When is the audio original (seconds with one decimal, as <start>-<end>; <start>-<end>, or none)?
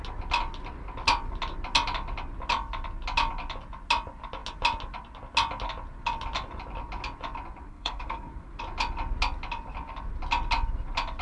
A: 0.0-7.7; 8.3-11.2